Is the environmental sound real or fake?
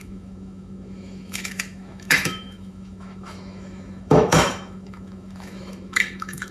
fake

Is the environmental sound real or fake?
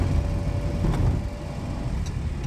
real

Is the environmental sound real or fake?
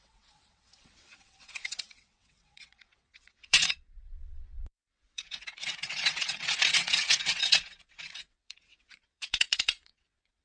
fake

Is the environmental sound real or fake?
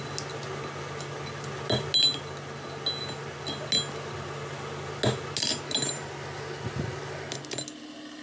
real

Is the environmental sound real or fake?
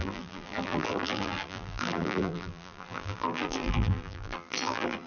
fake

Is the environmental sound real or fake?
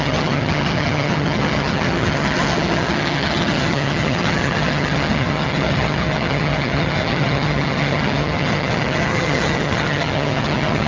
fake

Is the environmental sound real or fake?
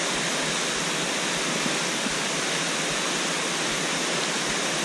real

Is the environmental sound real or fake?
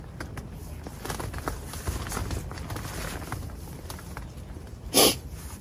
fake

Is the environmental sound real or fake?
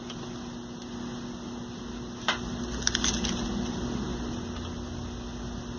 real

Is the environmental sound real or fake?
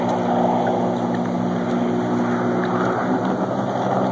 real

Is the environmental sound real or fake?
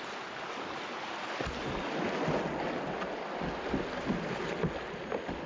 real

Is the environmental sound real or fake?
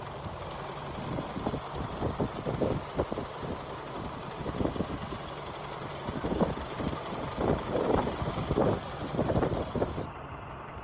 fake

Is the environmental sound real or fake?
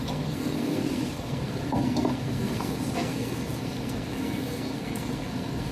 fake